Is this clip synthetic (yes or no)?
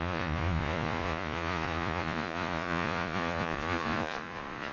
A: yes